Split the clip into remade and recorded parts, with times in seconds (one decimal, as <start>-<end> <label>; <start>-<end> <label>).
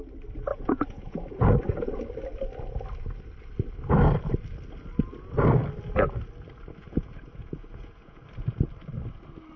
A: 0.0-0.5 recorded; 0.5-2.0 remade; 2.0-6.8 recorded; 6.8-8.2 remade; 8.2-9.6 recorded